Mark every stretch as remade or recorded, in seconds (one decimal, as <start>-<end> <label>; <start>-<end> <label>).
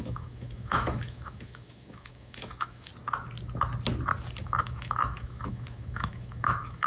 0.0-2.9 remade; 2.9-4.4 recorded; 4.4-6.9 remade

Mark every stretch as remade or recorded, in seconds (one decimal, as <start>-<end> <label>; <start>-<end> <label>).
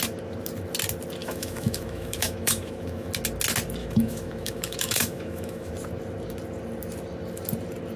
0.0-1.2 recorded; 1.2-3.1 remade; 3.1-3.8 recorded; 3.8-5.7 remade; 5.7-8.0 recorded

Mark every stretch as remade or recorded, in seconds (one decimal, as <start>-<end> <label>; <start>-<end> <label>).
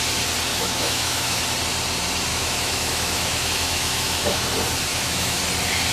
0.0-0.5 recorded; 0.5-1.4 remade; 1.4-2.3 recorded; 2.3-4.4 remade; 4.4-4.9 recorded; 4.9-5.4 remade; 5.4-5.9 recorded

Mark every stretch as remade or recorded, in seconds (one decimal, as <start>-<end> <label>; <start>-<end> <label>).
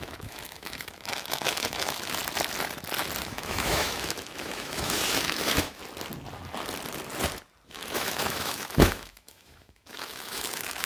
0.0-2.2 remade; 2.2-3.2 recorded; 3.2-5.8 remade; 5.8-7.7 recorded; 7.7-10.9 remade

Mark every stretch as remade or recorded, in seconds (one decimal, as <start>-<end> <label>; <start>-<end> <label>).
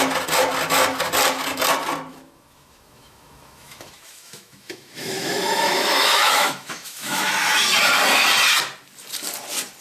0.0-2.1 recorded; 2.1-7.3 remade; 7.3-9.8 recorded